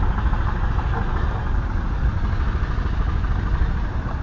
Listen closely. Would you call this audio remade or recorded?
recorded